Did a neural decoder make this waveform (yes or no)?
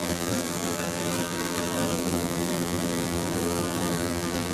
yes